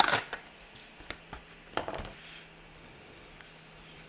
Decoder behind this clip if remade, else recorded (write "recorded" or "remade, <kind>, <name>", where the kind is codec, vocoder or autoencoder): recorded